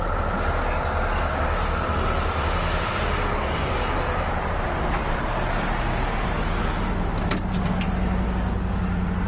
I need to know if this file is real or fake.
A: real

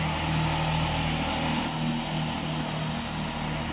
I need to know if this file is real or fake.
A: real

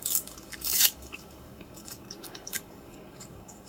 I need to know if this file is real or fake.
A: fake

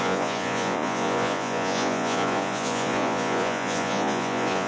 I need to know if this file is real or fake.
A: fake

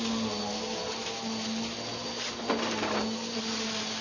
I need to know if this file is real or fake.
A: real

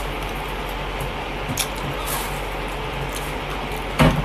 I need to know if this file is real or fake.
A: real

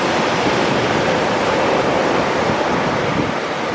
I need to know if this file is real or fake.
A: fake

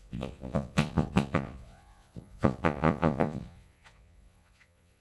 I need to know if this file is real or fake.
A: fake